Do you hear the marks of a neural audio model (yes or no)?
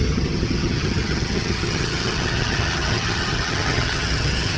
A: yes